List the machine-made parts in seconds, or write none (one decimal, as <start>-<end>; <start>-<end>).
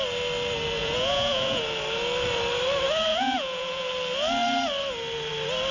0.8-1.6; 3.1-3.9